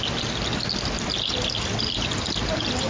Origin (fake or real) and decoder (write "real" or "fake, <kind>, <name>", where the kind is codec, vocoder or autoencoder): real